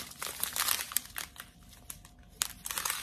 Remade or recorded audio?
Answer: recorded